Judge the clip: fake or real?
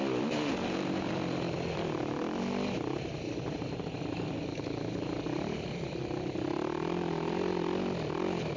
real